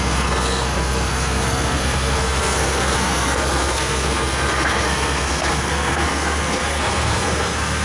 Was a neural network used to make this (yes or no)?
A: yes